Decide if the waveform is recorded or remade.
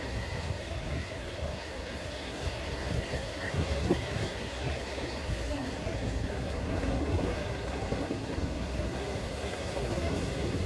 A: remade